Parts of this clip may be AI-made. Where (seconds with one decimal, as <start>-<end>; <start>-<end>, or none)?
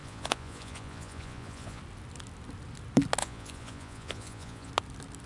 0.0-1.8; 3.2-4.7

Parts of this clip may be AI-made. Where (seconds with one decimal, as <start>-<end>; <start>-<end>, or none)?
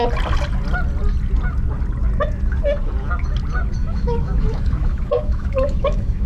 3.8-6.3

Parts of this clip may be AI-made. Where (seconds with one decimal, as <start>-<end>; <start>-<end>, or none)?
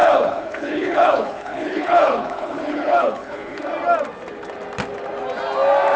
0.0-3.6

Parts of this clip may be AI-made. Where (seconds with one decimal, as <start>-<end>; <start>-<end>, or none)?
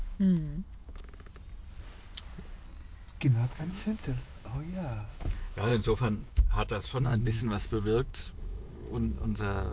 0.0-1.3; 3.3-9.7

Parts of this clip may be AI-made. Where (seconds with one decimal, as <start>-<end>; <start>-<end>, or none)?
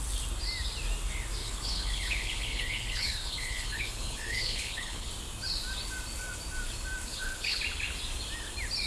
1.4-5.1; 7.1-7.6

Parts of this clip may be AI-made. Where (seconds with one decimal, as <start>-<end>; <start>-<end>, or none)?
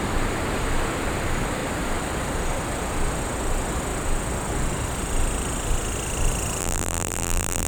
6.6-7.7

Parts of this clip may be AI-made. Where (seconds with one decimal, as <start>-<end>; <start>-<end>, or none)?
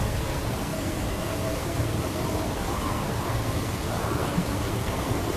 0.0-5.4